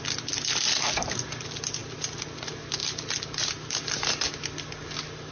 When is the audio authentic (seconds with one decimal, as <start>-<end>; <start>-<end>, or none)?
0.0-5.3